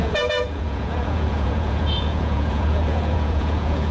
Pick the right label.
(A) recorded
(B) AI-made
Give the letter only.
B